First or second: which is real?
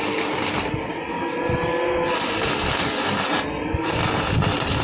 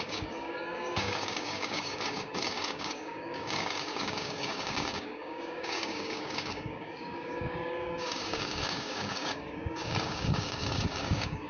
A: first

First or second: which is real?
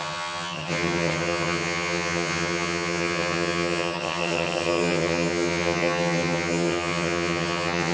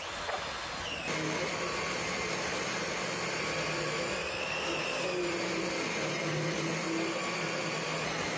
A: second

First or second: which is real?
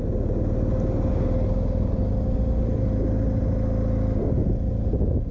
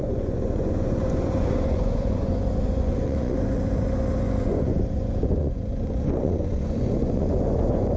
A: first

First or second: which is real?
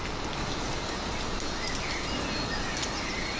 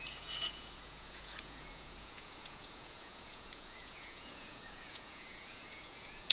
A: first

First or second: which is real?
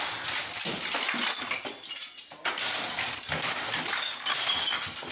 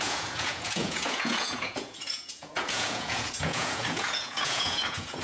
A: first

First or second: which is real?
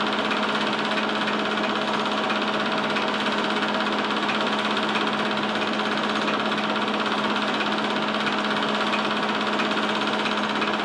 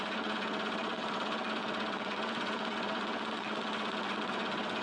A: first